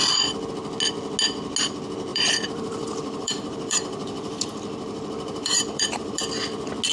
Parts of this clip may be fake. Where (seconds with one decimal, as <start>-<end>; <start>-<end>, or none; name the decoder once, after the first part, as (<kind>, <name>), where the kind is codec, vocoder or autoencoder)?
2.1-6.2 (vocoder, BigVGAN v2)